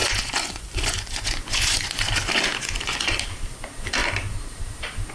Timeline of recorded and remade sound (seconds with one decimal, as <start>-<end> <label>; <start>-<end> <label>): 0.0-3.1 remade; 3.1-5.1 recorded